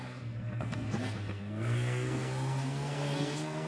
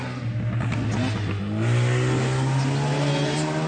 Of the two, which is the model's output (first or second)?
first